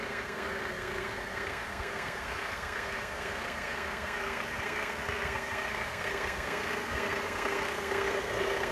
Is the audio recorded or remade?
remade